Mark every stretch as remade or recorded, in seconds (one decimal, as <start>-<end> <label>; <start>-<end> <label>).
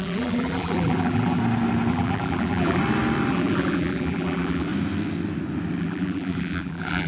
0.0-1.4 remade; 1.4-1.9 recorded; 1.9-2.8 remade; 2.8-3.3 recorded; 3.3-4.7 remade; 4.7-5.8 recorded; 5.8-7.1 remade